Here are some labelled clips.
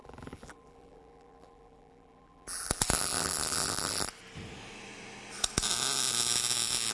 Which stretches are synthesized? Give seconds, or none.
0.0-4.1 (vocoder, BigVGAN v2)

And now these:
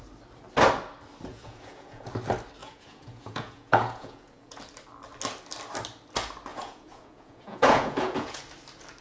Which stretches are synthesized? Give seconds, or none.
1.3-2.1 (vocoder, Vocos); 2.6-4.6; 6.5-8.4

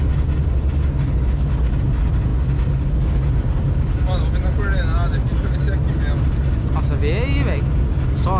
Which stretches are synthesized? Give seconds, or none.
none

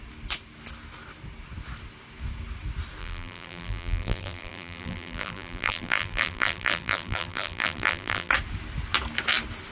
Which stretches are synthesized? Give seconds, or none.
3.0-8.3 (vocoder, BigVGAN v2)